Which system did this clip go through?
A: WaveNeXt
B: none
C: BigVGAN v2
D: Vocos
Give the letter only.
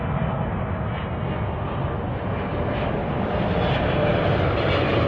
B